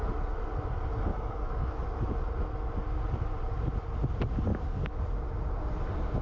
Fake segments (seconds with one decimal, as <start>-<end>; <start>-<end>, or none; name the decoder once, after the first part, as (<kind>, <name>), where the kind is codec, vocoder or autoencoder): 1.1-1.7 (codec, DAC); 4.5-5.1